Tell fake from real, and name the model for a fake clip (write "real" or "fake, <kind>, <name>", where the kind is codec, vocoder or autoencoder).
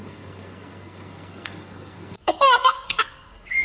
fake, codec, SNAC